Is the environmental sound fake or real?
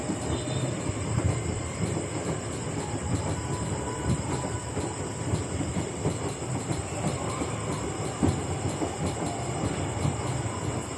fake